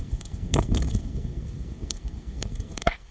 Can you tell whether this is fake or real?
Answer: fake